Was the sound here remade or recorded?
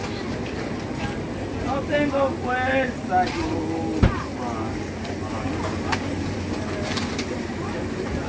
recorded